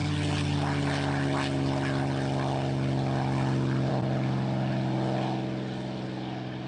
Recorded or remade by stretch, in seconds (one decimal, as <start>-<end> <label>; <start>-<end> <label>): 0.0-6.7 recorded